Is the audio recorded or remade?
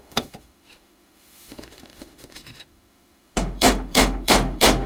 remade